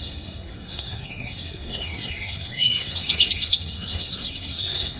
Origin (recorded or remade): remade